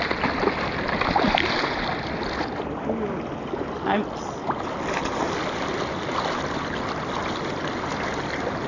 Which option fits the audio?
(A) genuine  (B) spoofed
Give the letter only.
A